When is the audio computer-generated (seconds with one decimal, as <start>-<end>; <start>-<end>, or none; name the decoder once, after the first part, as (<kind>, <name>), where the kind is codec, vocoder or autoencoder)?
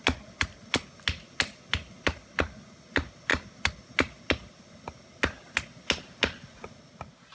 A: none